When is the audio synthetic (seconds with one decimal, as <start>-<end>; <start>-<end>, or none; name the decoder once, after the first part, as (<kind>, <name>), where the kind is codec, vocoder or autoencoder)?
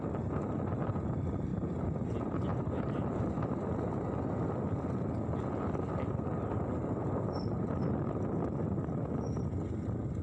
1.5-3.3 (vocoder, BigVGAN v2); 7.0-8.1